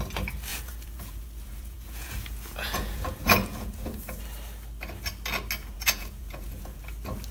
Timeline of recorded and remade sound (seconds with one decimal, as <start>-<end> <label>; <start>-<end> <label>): 0.0-0.5 recorded; 0.5-4.2 remade; 4.2-5.6 recorded; 5.6-6.8 remade; 6.8-7.3 recorded